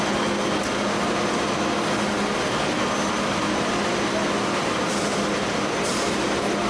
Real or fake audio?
real